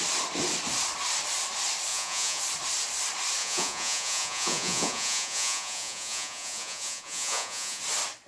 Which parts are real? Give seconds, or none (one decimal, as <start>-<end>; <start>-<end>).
0.0-1.9; 2.4-3.4; 7.8-8.3